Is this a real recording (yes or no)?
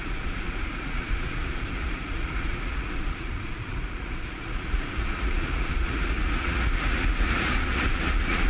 no